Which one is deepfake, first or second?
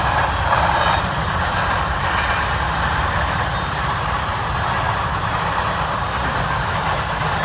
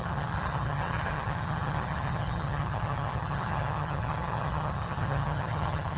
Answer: second